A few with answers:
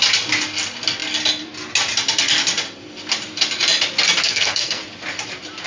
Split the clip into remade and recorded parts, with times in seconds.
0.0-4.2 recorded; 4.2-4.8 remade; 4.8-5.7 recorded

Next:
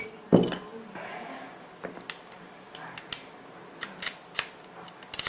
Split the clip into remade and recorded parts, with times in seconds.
0.0-5.3 recorded

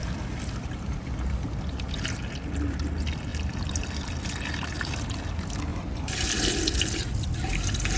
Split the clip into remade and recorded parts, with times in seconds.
0.0-1.0 remade; 1.0-3.3 recorded; 3.3-4.2 remade; 4.2-5.7 recorded; 5.7-6.6 remade; 6.6-8.0 recorded

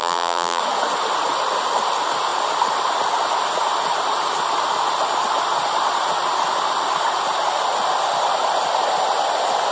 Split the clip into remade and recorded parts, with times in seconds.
0.0-0.6 remade; 0.6-9.7 recorded

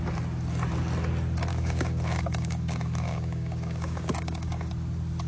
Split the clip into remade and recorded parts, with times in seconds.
0.0-1.5 recorded; 1.5-4.7 remade; 4.7-5.3 recorded

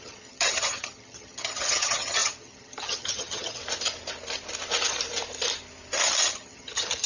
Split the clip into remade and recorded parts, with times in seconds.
0.0-3.6 remade; 3.6-6.3 recorded; 6.3-7.1 remade

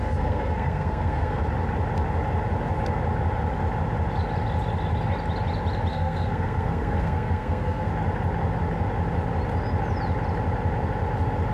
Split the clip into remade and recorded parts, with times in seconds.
0.0-1.4 remade; 1.4-5.9 recorded; 5.9-7.9 remade; 7.9-11.5 recorded